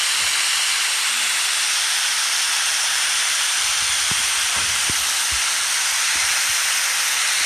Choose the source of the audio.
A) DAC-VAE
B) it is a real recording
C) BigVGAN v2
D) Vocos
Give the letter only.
C